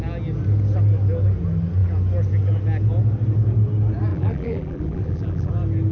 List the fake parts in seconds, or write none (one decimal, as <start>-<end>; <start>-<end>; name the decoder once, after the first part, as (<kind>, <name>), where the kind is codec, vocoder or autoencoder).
4.1-5.5 (vocoder, BigVGAN v2)